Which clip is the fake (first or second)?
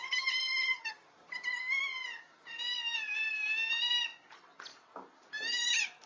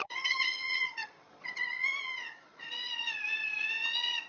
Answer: second